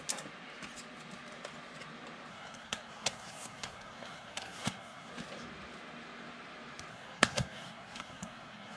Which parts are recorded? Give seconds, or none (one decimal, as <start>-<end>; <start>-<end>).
0.0-2.3; 5.1-6.9